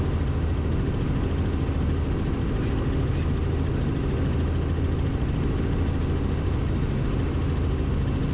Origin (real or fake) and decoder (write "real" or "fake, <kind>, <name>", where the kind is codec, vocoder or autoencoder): real